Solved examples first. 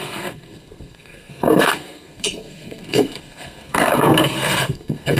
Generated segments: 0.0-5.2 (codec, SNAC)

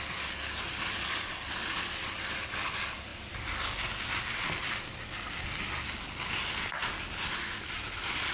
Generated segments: none

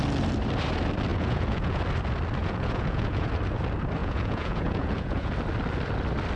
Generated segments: 1.1-1.8 (vocoder, Vocos); 2.4-3.3; 4.0-5.3